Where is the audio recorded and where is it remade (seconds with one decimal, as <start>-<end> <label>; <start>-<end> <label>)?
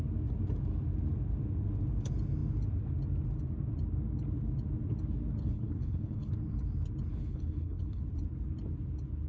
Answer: 0.0-5.4 recorded; 5.4-6.3 remade; 6.3-7.1 recorded; 7.1-8.0 remade; 8.0-9.3 recorded